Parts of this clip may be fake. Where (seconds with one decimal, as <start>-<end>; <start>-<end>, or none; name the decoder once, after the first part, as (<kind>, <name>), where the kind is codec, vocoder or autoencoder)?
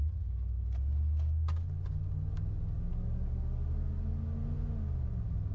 none